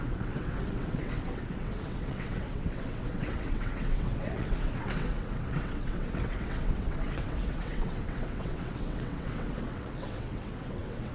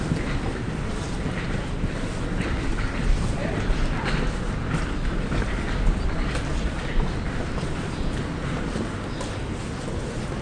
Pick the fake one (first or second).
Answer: first